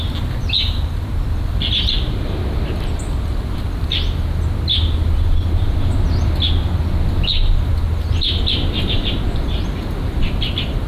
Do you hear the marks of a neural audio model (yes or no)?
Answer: no